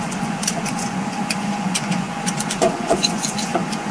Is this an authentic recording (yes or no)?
no